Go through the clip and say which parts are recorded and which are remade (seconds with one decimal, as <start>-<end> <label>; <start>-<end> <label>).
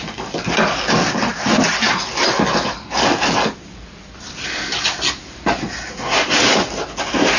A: 0.0-7.4 recorded